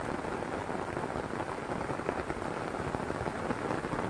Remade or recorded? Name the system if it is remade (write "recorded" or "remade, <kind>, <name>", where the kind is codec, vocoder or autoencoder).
recorded